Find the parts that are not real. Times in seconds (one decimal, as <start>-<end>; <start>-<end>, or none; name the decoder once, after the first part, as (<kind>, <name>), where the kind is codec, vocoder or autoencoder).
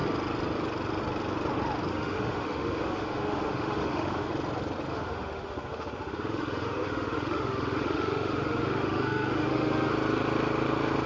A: 1.9-4.3 (autoencoder, DAC-VAE); 4.9-9.9